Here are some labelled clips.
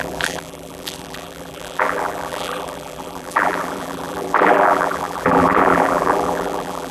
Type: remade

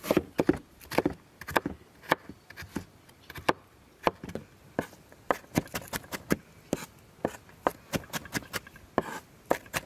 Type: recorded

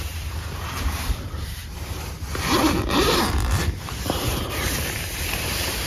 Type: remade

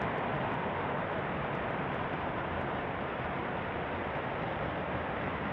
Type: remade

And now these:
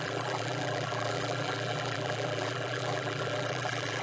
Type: remade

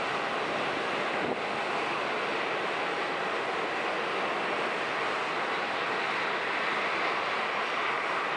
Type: recorded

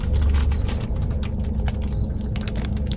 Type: recorded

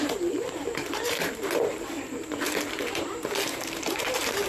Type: remade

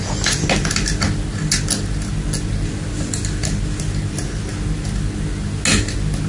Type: recorded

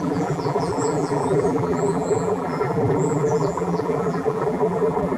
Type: remade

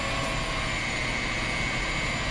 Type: recorded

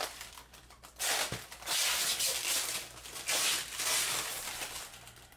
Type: recorded